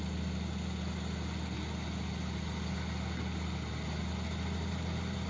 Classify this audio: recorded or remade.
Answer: recorded